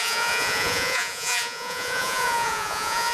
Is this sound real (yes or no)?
no